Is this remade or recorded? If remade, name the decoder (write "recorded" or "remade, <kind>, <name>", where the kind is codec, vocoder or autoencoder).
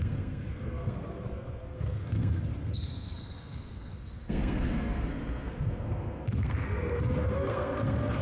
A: remade, codec, SNAC